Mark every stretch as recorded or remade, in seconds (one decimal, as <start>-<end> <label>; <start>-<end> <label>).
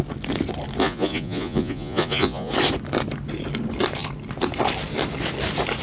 0.0-0.8 recorded; 0.8-2.5 remade; 2.5-5.8 recorded